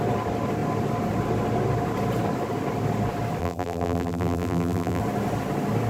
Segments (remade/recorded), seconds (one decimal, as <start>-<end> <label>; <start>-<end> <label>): 0.0-3.4 recorded; 3.4-5.0 remade; 5.0-5.9 recorded